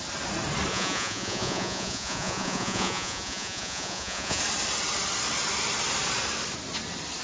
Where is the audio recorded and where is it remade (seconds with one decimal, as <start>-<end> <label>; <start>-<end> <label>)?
0.0-0.7 recorded; 0.7-4.4 remade; 4.4-7.2 recorded